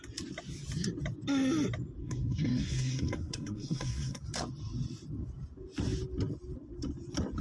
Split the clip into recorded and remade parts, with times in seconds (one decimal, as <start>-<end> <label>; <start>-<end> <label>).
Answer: 0.0-2.0 recorded; 2.0-4.2 remade; 4.2-7.4 recorded